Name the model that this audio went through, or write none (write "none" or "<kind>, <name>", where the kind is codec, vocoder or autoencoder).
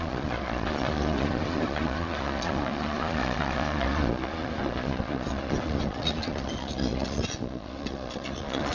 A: vocoder, Vocos